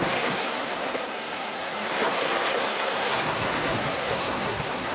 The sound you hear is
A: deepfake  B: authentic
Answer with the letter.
A